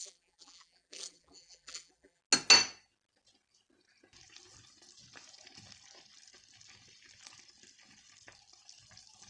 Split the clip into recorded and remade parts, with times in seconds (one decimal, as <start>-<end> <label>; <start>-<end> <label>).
0.0-2.2 remade; 2.2-9.3 recorded